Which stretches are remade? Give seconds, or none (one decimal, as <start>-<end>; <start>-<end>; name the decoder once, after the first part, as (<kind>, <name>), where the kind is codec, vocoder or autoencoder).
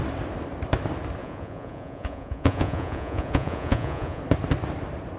1.2-4.2 (vocoder, Vocos)